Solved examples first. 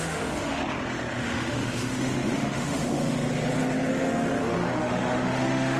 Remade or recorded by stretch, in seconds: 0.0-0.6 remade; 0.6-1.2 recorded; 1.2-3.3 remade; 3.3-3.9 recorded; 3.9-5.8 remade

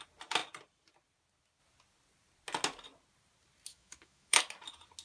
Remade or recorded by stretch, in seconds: 0.0-3.7 recorded; 3.7-4.4 remade; 4.4-5.0 recorded